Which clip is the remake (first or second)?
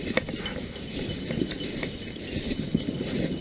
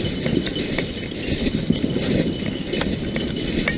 second